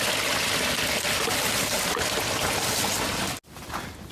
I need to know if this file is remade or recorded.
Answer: recorded